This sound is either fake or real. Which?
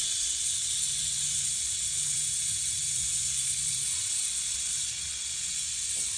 fake